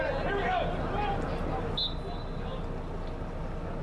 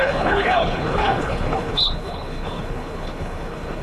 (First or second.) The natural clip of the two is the first